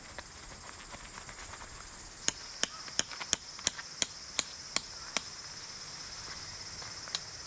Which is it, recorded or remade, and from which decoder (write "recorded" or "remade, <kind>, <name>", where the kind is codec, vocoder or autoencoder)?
recorded